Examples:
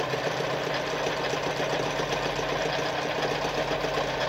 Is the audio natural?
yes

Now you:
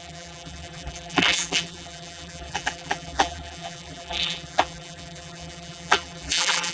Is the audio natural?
no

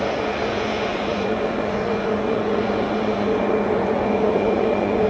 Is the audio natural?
no